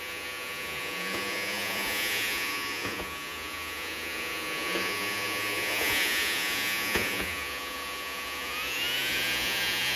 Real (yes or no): no